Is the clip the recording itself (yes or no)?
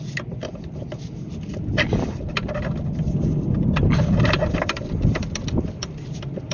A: yes